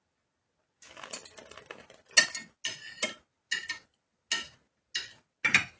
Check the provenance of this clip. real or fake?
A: real